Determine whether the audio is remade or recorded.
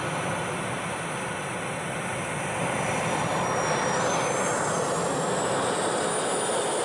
recorded